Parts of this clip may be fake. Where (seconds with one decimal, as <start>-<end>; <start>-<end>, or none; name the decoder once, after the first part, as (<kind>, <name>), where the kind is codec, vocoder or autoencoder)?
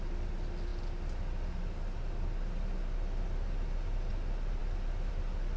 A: none